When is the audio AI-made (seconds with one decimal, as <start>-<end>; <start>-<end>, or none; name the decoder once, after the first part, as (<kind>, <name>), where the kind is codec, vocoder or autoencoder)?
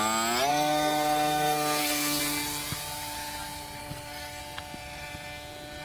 0.5-2.2 (codec, SNAC); 3.8-4.4